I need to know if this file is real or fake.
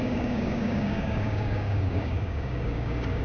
fake